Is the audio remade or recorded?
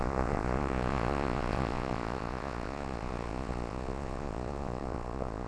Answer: remade